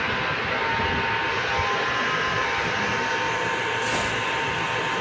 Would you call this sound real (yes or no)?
yes